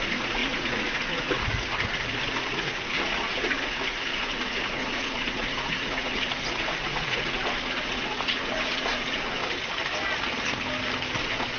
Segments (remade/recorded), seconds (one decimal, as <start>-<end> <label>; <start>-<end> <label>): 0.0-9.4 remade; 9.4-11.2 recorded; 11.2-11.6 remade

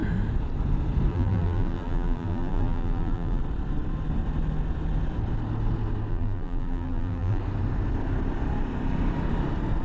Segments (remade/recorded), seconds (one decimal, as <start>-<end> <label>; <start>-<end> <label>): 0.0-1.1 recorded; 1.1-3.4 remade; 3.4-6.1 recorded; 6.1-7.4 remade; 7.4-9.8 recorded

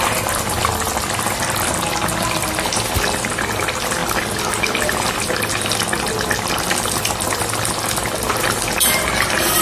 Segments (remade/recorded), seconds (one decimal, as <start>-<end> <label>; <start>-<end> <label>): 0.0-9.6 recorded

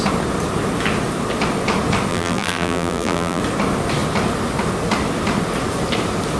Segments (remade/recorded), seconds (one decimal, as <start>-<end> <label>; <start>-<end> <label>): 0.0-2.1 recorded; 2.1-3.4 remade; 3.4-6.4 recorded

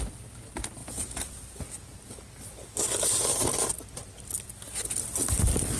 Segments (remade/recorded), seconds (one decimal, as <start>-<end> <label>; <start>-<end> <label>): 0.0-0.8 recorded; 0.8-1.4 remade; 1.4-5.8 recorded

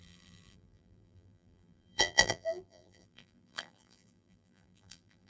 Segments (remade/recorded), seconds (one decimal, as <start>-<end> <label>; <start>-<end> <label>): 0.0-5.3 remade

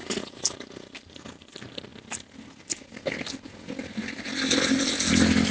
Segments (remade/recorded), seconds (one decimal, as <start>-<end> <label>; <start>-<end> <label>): 0.0-1.9 recorded; 1.9-5.1 remade; 5.1-5.5 recorded